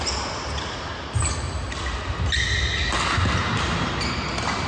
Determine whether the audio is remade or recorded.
recorded